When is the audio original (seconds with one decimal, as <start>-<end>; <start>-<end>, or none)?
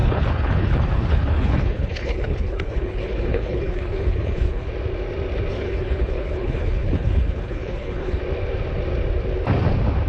4.7-5.5; 8.2-10.1